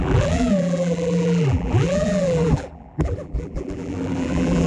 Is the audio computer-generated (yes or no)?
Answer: yes